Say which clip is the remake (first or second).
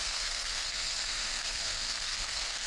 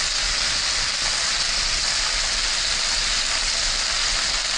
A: first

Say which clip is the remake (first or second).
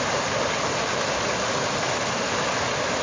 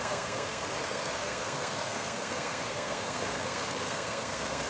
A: second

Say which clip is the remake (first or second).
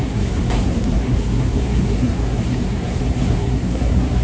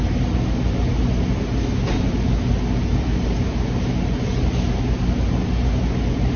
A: first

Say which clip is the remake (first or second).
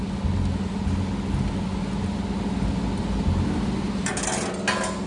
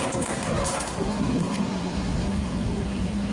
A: second